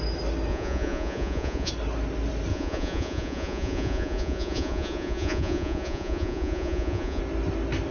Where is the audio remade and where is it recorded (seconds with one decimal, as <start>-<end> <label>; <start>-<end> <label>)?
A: 0.0-0.5 recorded; 0.5-1.7 remade; 1.7-2.5 recorded; 2.5-7.2 remade; 7.2-7.9 recorded